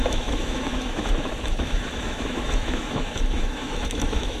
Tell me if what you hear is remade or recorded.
remade